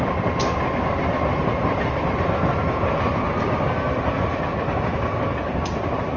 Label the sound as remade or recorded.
recorded